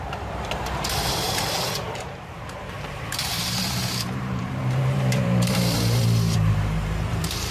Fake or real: fake